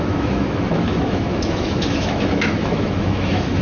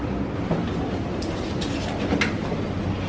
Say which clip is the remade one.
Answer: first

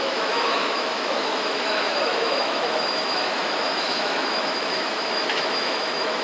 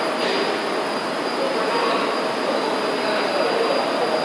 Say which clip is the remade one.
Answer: first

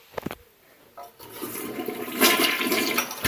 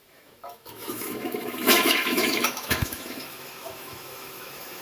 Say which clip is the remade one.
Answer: second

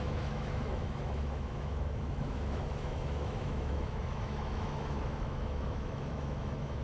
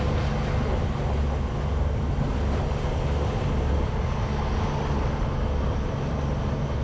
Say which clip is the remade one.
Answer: first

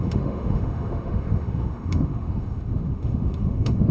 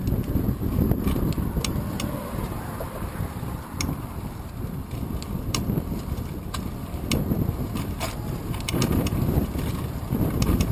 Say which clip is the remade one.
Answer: first